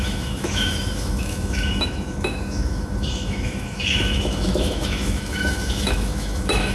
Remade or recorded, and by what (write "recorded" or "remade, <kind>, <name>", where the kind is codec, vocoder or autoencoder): remade, autoencoder, DAC-VAE